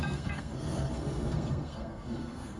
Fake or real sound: fake